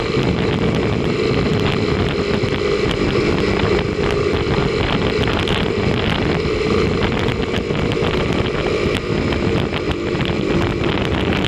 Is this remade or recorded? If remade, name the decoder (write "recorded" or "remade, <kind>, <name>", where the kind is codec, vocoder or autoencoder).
recorded